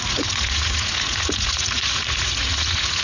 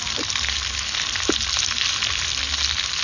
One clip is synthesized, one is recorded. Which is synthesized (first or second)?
first